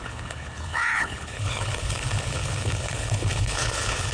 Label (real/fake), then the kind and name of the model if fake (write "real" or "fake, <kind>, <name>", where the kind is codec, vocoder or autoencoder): fake, codec, HILCodec